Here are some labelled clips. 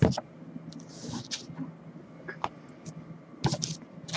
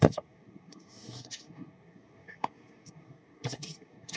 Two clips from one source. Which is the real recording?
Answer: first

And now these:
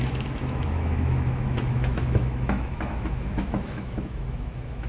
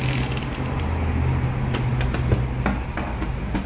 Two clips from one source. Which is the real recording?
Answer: second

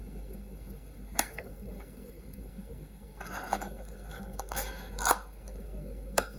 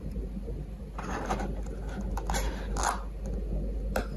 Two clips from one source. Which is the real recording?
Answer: second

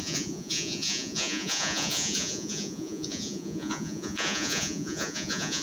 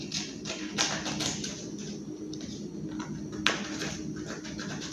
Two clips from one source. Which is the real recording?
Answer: second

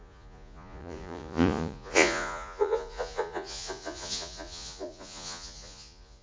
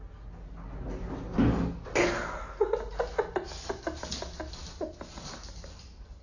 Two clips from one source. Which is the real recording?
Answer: second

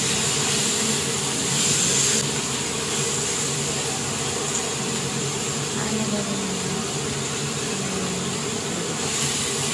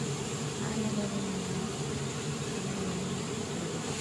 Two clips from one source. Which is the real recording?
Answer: first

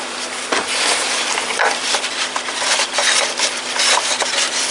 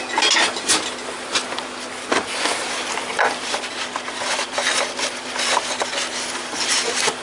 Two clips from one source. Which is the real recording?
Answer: second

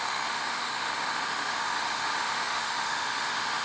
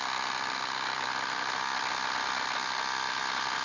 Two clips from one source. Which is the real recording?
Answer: second